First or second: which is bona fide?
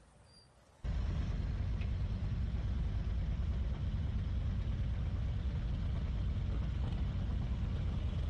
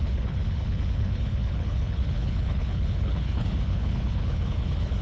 first